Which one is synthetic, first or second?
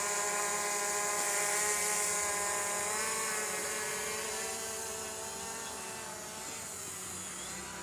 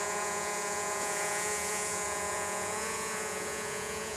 second